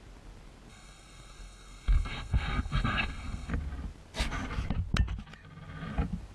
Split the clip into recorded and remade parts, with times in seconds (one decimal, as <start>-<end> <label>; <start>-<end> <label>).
0.0-0.7 recorded; 0.7-3.5 remade; 3.5-6.3 recorded